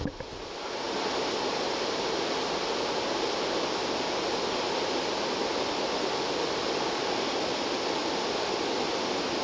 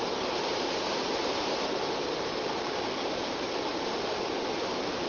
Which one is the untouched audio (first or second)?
first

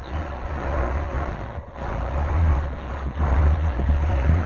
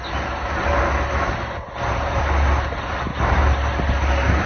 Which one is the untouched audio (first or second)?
second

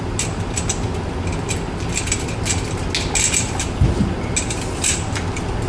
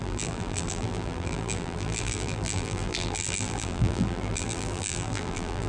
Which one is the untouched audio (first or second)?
first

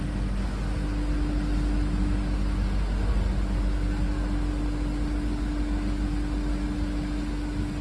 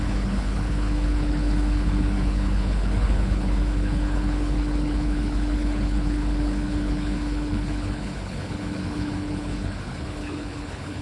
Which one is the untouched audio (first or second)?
first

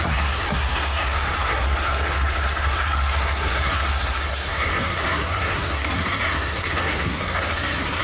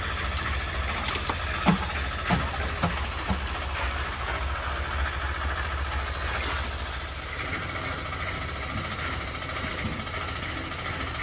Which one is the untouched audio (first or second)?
second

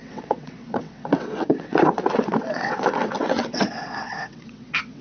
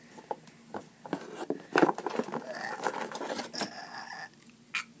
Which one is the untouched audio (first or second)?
second